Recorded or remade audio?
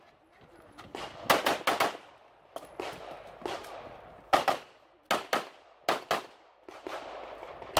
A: recorded